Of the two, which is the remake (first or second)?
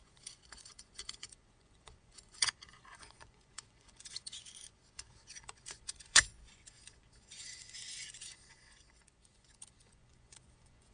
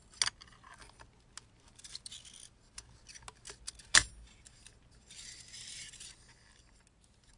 first